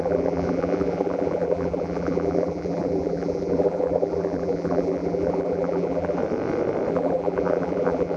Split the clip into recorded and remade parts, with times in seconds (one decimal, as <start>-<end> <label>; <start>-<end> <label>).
0.0-6.2 remade; 6.2-6.9 recorded; 6.9-8.2 remade